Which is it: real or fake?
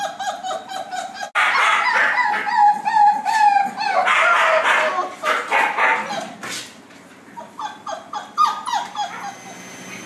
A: real